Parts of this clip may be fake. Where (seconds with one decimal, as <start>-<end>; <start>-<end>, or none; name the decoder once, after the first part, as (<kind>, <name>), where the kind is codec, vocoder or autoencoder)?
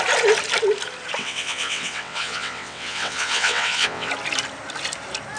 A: 1.2-4.1 (vocoder, WaveNeXt)